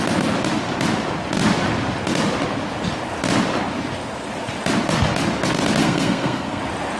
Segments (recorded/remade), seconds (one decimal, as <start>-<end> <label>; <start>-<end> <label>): 0.0-5.8 recorded; 5.8-6.6 remade; 6.6-7.0 recorded